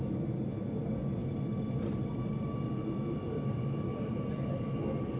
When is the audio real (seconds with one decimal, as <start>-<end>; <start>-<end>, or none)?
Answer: 0.0-5.2